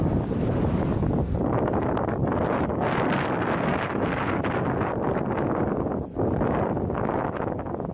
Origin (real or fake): real